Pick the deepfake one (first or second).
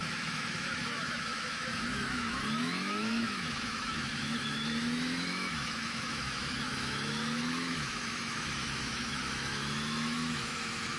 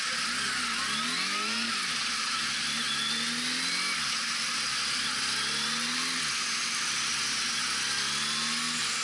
first